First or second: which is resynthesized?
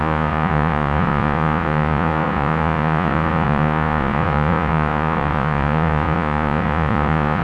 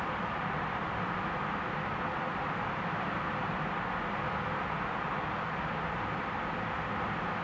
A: first